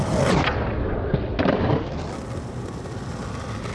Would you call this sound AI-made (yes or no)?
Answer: no